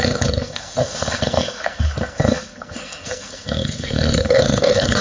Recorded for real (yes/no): no